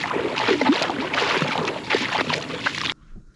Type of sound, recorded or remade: recorded